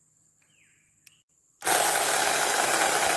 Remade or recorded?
recorded